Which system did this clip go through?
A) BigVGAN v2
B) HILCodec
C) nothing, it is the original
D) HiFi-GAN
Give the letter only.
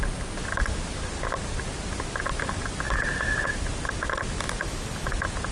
C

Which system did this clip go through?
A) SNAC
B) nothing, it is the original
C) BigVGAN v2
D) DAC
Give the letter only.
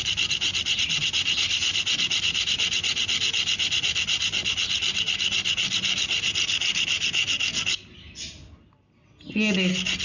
B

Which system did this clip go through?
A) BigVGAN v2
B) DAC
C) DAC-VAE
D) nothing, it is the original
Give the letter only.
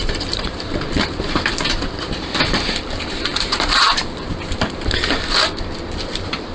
A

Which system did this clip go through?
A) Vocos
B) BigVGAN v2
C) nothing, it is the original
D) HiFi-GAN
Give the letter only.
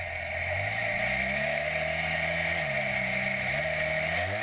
C